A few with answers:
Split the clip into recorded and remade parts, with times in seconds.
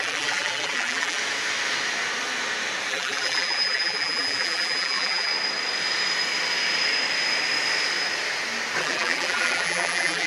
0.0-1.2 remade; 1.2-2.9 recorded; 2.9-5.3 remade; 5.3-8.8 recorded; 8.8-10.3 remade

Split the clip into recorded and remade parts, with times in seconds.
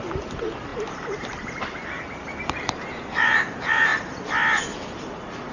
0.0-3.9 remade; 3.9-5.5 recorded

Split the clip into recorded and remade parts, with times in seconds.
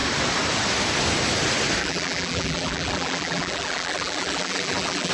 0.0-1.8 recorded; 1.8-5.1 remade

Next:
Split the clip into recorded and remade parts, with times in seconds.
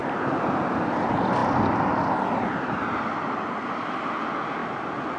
0.0-0.8 remade; 0.8-1.4 recorded; 1.4-3.4 remade; 3.4-4.6 recorded; 4.6-5.2 remade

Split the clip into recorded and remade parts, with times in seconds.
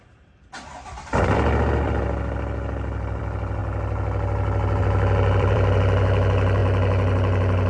0.0-3.6 remade; 3.6-4.8 recorded; 4.8-6.6 remade; 6.6-7.7 recorded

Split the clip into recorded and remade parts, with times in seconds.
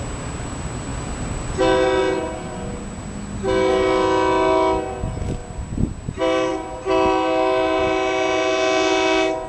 0.0-9.5 recorded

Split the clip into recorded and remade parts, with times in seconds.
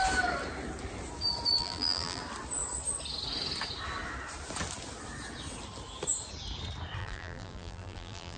0.0-1.6 recorded; 1.6-2.2 remade; 2.2-7.0 recorded; 7.0-8.4 remade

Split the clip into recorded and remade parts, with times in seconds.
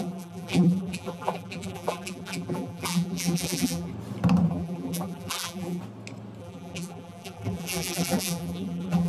0.0-3.9 remade; 3.9-4.5 recorded; 4.5-5.8 remade; 5.8-6.4 recorded; 6.4-9.1 remade